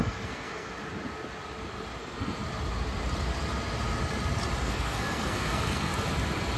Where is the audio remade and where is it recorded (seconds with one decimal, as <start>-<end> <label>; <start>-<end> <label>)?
0.0-0.7 remade; 0.7-2.0 recorded; 2.0-2.4 remade; 2.4-4.6 recorded; 4.6-5.9 remade; 5.9-6.6 recorded